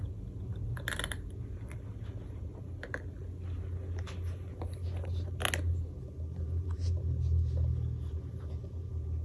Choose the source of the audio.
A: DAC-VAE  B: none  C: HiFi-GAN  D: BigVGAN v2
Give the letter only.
B